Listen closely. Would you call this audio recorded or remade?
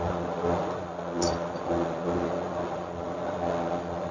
remade